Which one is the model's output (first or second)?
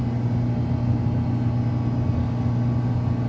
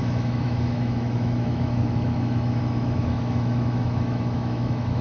second